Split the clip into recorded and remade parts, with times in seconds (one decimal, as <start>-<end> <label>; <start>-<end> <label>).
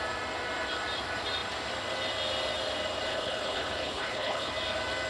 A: 0.0-3.1 recorded; 3.1-4.5 remade; 4.5-5.1 recorded